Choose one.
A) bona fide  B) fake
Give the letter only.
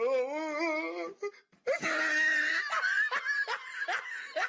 A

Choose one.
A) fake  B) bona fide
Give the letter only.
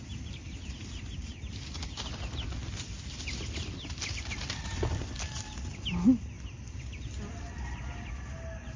B